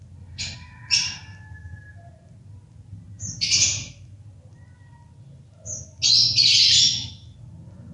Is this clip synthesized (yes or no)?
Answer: no